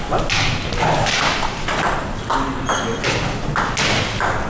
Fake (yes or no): no